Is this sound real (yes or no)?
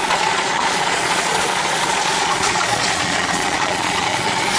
no